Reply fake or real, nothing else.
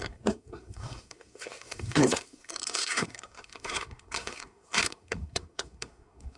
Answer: fake